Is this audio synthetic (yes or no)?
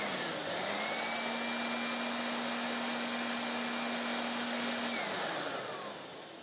no